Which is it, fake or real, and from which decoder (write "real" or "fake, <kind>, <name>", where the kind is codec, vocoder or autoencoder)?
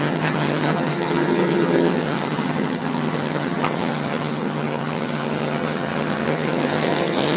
fake, vocoder, HiFi-GAN